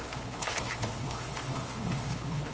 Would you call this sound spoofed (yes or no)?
yes